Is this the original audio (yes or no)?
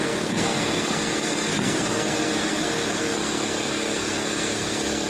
no